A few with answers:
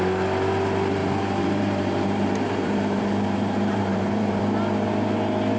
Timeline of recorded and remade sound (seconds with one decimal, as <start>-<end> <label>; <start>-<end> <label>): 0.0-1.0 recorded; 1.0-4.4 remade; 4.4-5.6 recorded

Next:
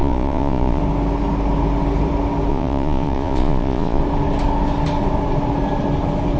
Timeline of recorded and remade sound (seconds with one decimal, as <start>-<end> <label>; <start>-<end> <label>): 0.0-0.8 remade; 0.8-2.5 recorded; 2.5-4.0 remade; 4.0-6.4 recorded

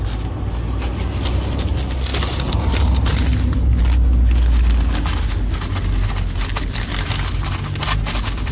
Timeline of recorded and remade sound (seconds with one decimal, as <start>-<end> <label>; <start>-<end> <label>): 0.0-8.5 recorded

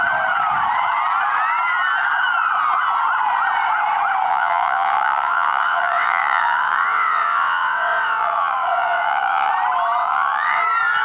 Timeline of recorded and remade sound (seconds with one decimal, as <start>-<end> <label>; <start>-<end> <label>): 0.0-4.3 recorded; 4.3-9.5 remade; 9.5-10.0 recorded; 10.0-10.6 remade; 10.6-11.0 recorded